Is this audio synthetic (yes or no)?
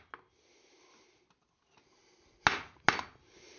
no